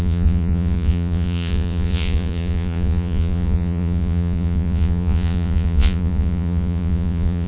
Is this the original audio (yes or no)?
no